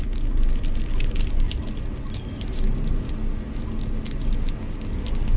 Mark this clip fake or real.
real